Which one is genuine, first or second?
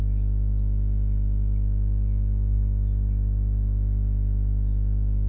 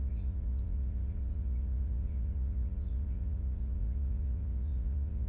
first